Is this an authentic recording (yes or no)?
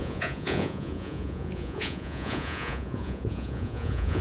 no